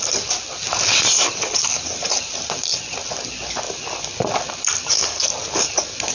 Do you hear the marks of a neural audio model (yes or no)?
no